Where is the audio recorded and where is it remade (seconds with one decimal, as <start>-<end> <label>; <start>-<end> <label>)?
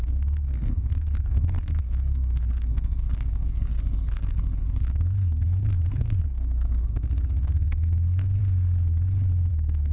0.0-8.4 remade; 8.4-9.5 recorded; 9.5-9.9 remade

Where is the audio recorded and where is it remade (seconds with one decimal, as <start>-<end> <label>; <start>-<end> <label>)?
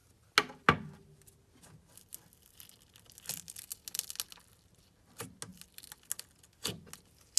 0.0-7.4 recorded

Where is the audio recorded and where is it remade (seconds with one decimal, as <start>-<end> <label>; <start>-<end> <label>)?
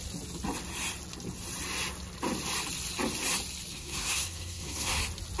0.0-3.7 recorded; 3.7-5.0 remade; 5.0-5.4 recorded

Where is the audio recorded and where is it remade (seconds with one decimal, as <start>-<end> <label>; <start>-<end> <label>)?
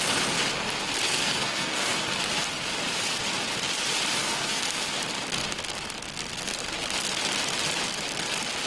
0.0-1.1 recorded; 1.1-2.2 remade; 2.2-4.2 recorded; 4.2-4.9 remade; 4.9-8.7 recorded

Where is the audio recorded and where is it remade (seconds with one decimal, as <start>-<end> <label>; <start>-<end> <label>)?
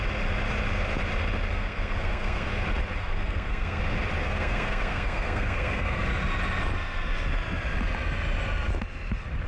0.0-1.5 recorded; 1.5-2.5 remade; 2.5-3.0 recorded; 3.0-3.8 remade; 3.8-4.2 recorded; 4.2-6.0 remade; 6.0-9.5 recorded